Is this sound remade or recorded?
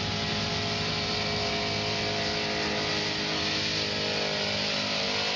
recorded